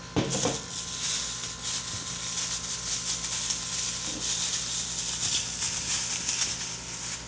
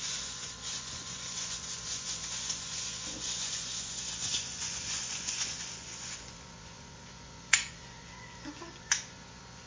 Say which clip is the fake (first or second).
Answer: second